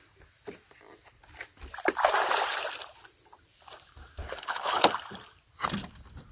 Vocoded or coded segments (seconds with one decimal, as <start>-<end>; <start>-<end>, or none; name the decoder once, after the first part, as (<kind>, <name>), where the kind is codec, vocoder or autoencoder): 4.2-4.8 (codec, HILCodec)